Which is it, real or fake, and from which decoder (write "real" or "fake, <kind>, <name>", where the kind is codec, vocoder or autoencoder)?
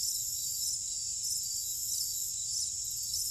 real